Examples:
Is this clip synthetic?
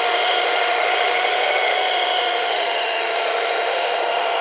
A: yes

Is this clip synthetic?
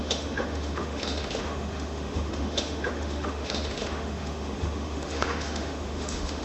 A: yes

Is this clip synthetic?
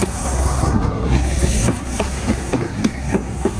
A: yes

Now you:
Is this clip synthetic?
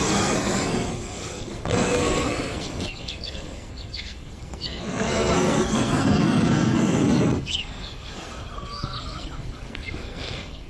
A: yes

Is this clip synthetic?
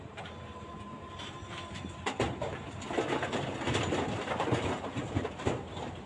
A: yes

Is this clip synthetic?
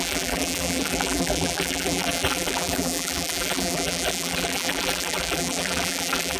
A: yes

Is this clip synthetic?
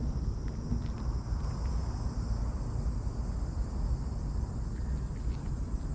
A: no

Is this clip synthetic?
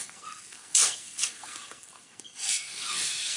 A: yes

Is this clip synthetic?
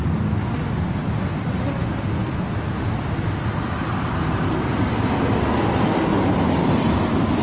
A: no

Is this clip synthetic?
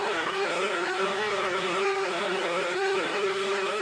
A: yes